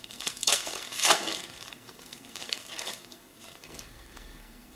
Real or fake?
fake